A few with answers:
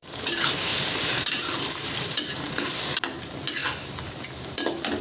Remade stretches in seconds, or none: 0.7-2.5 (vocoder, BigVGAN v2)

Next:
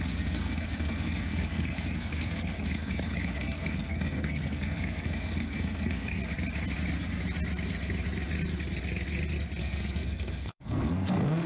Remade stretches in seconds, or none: 0.0-6.2 (codec, SNAC); 9.6-11.5